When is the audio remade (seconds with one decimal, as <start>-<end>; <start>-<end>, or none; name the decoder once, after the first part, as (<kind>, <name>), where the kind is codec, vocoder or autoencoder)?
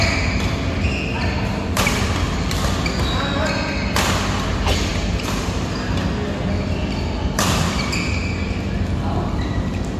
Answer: 1.1-2.0 (vocoder, BigVGAN v2)